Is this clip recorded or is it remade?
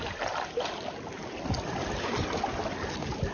recorded